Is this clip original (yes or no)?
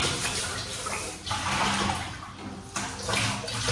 yes